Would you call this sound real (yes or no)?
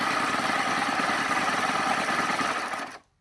yes